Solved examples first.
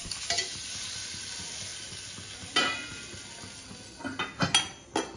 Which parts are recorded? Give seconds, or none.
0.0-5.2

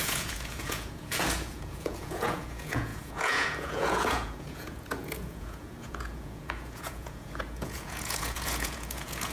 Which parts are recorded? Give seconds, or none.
none

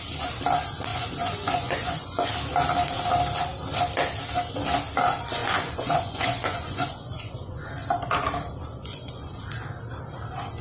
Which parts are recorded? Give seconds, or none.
0.0-0.9; 2.3-5.4; 7.7-8.8; 9.4-10.6